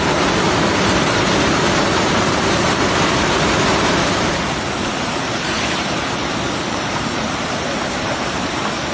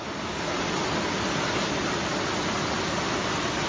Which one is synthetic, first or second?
first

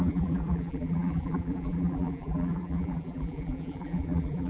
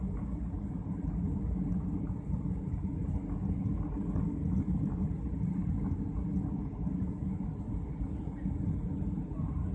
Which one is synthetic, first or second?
first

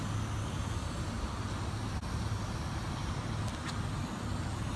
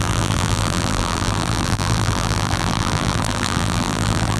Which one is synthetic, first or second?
second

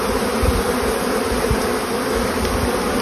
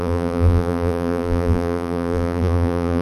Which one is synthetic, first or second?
second